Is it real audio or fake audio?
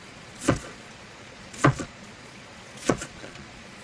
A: fake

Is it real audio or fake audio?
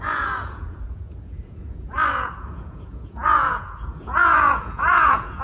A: fake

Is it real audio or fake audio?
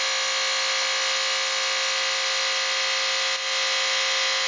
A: real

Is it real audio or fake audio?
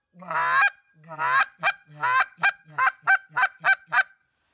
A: real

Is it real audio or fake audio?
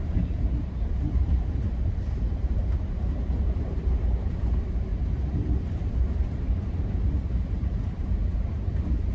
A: fake